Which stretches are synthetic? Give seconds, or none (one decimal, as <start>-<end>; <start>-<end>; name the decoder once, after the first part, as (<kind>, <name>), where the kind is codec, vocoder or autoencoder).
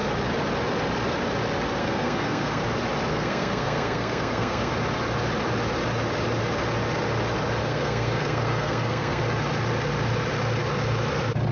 1.8-2.6 (codec, SNAC); 3.1-4.7; 7.6-9.2